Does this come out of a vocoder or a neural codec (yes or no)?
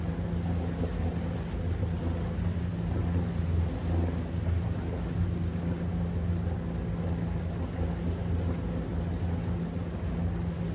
no